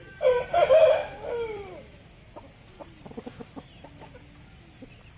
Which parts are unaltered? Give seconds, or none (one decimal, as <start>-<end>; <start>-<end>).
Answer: none